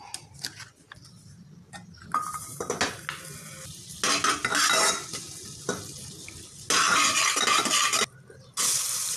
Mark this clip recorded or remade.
recorded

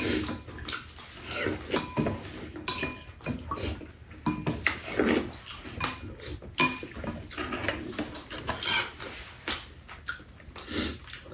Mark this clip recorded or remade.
recorded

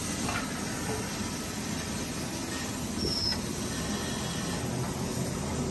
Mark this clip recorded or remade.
recorded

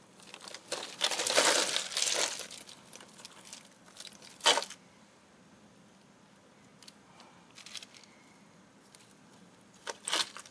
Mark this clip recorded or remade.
recorded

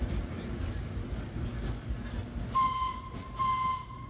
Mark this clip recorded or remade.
recorded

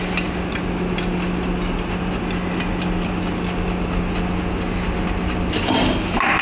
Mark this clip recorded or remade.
recorded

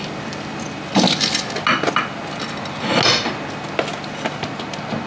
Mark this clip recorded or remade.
recorded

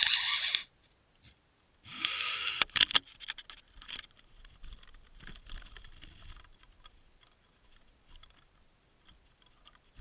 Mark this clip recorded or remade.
recorded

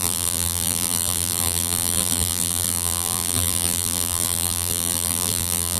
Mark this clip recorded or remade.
remade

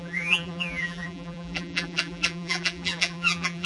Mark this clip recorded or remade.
remade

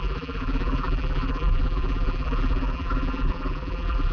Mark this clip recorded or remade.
remade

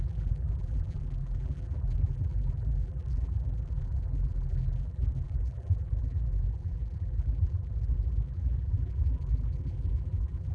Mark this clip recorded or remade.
remade